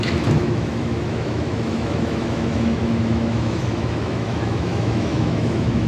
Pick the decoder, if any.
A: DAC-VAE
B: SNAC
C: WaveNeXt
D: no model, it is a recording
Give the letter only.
A